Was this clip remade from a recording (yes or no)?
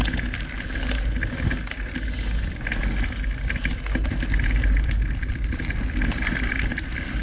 no